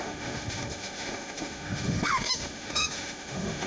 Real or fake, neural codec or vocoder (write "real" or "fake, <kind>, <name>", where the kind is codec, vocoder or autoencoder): fake, autoencoder, DAC-VAE